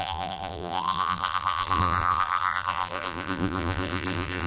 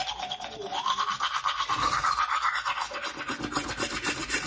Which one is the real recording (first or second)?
second